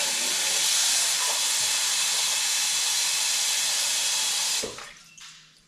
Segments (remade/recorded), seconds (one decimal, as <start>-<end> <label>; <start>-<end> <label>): 0.0-4.0 recorded; 4.0-5.1 remade; 5.1-5.7 recorded